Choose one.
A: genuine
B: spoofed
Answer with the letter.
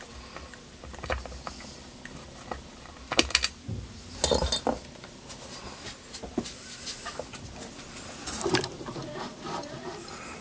A